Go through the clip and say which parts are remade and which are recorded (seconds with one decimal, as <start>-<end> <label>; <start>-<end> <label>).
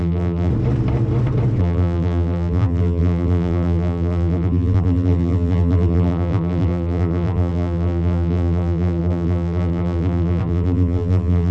0.0-0.5 remade; 0.5-1.6 recorded; 1.6-11.5 remade